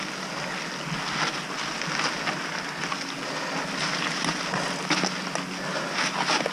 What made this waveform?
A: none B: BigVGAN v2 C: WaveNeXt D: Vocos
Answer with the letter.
A